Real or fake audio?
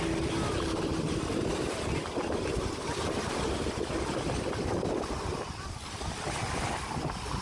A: real